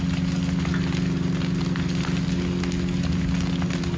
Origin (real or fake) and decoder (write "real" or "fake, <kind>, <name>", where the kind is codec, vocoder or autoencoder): real